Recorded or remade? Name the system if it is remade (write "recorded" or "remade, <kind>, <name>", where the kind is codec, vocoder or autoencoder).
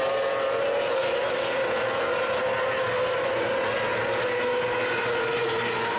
recorded